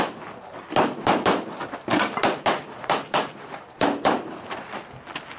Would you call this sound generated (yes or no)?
no